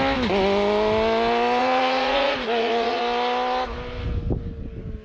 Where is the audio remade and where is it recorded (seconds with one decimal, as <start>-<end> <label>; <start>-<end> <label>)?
0.0-1.6 recorded; 1.6-3.0 remade; 3.0-5.0 recorded